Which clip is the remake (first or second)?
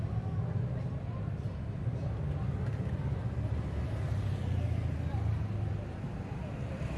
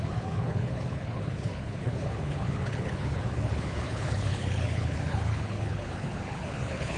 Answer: second